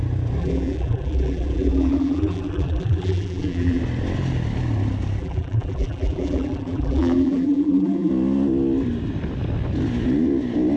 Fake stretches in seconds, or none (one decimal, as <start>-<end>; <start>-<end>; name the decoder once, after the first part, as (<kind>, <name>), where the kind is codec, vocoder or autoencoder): 0.4-3.8 (vocoder, BigVGAN v2); 5.2-8.1